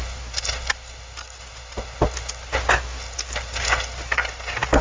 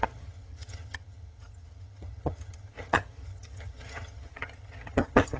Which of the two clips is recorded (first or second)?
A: first